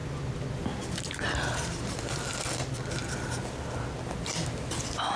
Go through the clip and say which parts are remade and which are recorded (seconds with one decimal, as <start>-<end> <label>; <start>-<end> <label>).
0.0-5.2 recorded